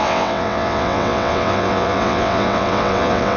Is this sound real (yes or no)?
no